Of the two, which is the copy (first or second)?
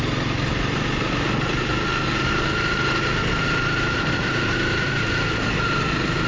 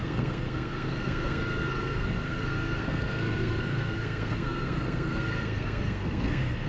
second